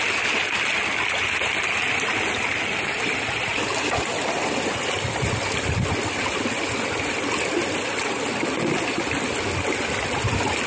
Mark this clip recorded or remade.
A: recorded